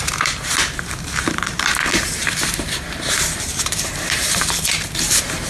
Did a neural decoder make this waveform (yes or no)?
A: yes